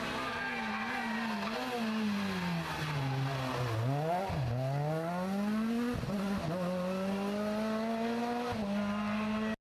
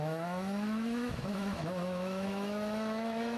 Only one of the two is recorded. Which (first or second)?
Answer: first